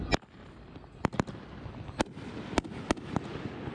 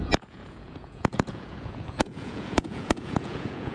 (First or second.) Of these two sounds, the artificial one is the second